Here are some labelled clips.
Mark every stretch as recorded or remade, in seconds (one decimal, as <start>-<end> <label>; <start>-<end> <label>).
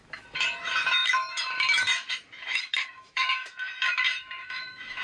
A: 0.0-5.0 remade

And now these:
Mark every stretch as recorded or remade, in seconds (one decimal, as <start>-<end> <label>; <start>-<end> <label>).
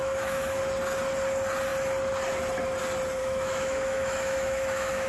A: 0.0-0.6 remade; 0.6-3.2 recorded; 3.2-5.1 remade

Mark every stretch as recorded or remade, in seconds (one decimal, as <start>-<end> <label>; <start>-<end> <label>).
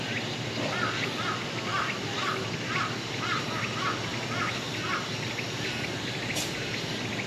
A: 0.0-7.3 recorded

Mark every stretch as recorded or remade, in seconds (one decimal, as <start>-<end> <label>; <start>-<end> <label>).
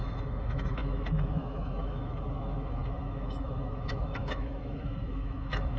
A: 0.0-5.8 remade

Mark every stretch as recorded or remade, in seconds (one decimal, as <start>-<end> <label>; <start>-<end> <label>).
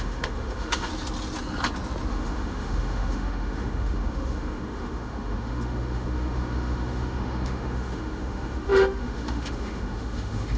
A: 0.0-0.9 remade; 0.9-2.1 recorded; 2.1-10.6 remade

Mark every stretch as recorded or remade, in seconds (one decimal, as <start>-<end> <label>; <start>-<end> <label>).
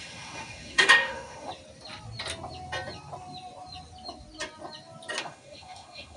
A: 0.0-1.5 remade; 1.5-5.2 recorded; 5.2-6.2 remade